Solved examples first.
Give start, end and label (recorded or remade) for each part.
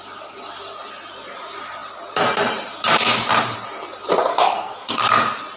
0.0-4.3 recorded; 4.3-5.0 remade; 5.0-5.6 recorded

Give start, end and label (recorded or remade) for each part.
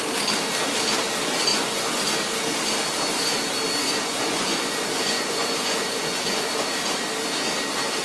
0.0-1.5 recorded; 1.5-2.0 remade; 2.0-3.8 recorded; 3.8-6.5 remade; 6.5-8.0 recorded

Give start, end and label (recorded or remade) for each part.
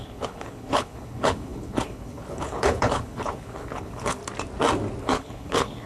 0.0-4.2 remade; 4.2-5.0 recorded; 5.0-5.9 remade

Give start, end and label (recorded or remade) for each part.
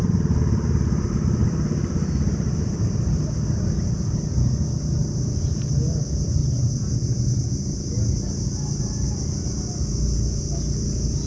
0.0-1.4 recorded; 1.4-3.0 remade; 3.0-11.3 recorded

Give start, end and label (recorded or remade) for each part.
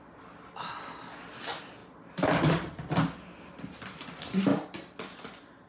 0.0-5.7 recorded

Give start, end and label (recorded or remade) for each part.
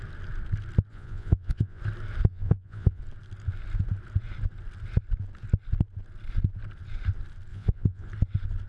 0.0-0.9 recorded; 0.9-1.8 remade; 1.8-2.3 recorded; 2.3-3.0 remade; 3.0-7.5 recorded; 7.5-8.1 remade; 8.1-8.7 recorded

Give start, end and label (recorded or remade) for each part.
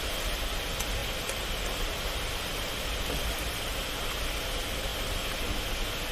0.0-6.1 recorded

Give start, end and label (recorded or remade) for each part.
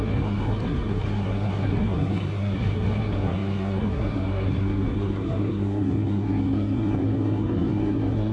0.0-8.3 remade